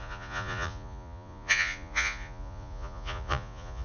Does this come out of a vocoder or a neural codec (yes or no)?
yes